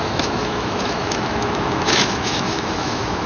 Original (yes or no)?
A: no